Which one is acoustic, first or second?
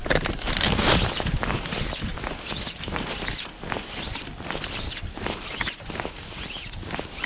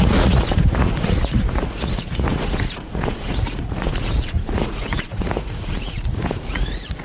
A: first